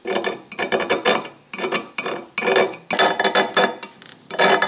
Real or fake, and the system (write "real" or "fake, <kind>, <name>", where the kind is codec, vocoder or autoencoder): real